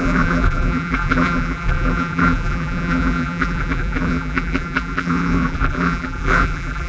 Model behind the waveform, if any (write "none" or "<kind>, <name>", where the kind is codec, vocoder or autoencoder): vocoder, BigVGAN v2